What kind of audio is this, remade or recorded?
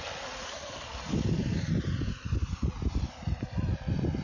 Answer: recorded